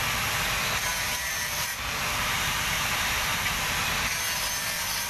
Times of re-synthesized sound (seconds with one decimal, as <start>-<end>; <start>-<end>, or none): 0.9-4.0